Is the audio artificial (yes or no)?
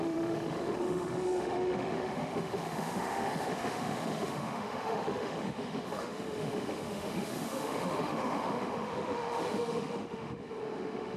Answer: yes